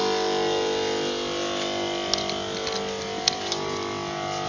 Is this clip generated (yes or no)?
no